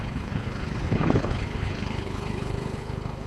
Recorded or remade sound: remade